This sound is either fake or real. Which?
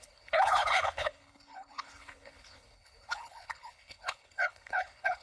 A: fake